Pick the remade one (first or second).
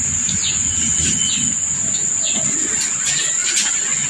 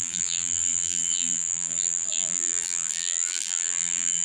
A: second